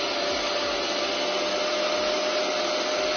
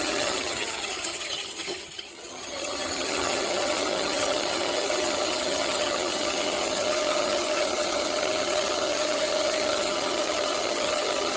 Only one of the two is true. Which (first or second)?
first